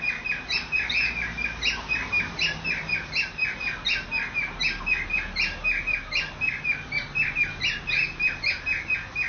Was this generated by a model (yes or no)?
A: no